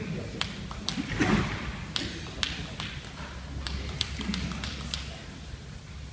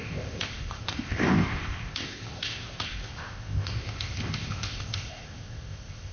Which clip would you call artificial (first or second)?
second